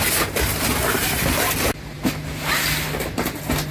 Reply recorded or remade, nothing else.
recorded